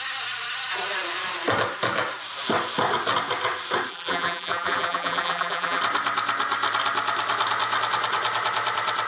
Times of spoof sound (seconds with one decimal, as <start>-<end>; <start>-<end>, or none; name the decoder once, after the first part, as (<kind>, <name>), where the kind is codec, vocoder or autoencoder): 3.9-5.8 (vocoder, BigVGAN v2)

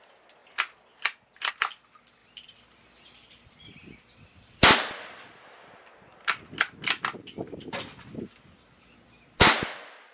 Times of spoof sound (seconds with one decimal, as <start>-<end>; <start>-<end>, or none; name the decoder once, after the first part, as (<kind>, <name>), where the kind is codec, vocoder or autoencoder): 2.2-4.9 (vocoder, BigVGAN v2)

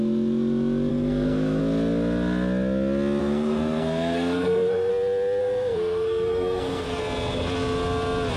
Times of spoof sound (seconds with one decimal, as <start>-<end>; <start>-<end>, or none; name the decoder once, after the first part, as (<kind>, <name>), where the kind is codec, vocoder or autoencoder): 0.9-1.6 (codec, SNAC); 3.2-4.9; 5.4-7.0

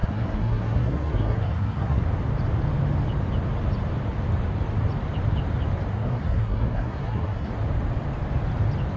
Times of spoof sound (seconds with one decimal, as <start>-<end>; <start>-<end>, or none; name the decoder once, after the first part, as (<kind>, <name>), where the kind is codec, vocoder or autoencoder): 0.0-2.0 (codec, SNAC); 5.9-7.5